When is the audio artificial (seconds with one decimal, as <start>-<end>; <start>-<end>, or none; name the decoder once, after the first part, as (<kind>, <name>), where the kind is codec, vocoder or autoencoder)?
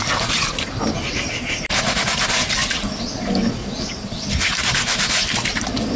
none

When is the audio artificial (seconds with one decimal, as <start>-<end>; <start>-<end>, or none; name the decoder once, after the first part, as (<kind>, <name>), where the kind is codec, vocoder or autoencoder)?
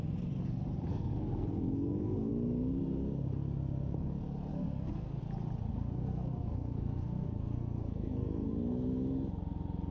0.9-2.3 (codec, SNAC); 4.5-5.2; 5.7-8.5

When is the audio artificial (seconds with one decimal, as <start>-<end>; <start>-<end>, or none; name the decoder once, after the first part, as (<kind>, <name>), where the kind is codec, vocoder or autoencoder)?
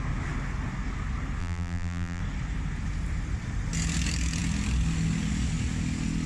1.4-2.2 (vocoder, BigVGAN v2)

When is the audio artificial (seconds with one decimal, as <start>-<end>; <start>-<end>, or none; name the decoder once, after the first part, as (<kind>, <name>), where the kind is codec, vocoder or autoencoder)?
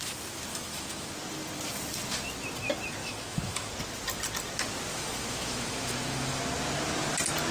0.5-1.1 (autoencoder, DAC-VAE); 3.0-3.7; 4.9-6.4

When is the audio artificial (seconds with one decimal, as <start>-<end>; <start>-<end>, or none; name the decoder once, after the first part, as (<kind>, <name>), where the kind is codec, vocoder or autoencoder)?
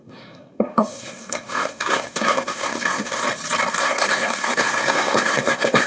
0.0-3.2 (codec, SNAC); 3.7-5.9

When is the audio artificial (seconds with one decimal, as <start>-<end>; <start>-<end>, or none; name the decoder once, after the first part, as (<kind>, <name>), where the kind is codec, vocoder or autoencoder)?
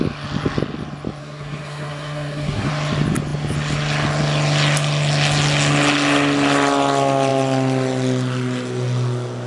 1.2-2.7 (codec, SNAC)